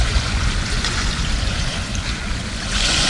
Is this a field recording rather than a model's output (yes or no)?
no